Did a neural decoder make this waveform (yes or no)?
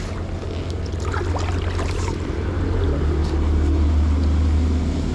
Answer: no